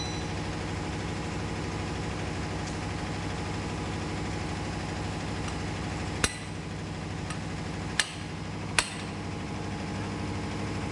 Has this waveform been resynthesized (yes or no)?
no